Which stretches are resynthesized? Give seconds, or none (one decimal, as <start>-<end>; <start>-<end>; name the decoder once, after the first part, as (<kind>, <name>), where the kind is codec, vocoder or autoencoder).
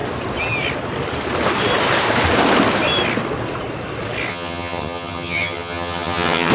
4.3-6.5 (vocoder, HiFi-GAN)